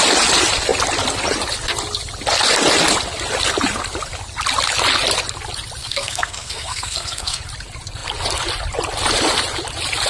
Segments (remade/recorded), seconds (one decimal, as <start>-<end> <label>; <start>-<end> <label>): 0.0-5.8 recorded; 5.8-7.4 remade; 7.4-10.1 recorded